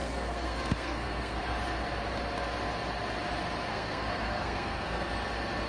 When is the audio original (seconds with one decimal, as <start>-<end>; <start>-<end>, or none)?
1.4-3.7; 5.1-5.7